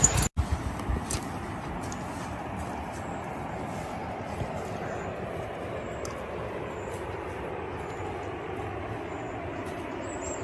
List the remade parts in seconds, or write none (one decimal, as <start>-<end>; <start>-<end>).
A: none